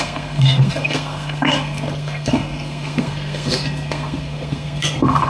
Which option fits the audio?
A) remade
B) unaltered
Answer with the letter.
A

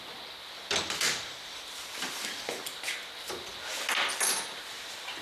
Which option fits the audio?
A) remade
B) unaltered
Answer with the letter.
B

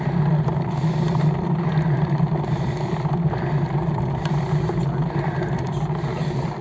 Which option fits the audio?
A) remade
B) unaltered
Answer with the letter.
B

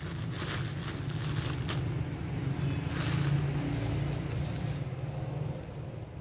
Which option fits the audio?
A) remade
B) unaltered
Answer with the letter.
B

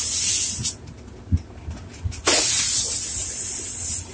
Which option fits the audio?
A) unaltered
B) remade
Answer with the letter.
A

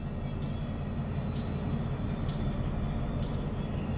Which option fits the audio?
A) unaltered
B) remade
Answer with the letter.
A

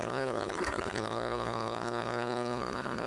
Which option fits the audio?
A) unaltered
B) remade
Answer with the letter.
B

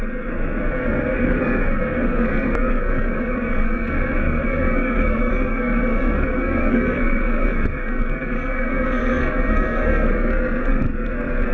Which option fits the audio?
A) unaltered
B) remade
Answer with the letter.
B